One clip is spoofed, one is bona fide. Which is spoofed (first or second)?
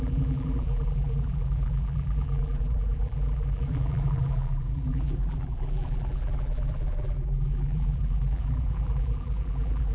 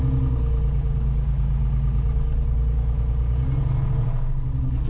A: first